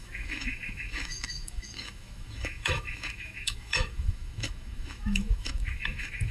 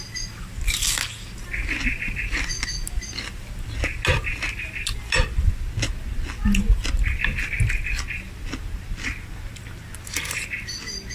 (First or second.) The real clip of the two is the second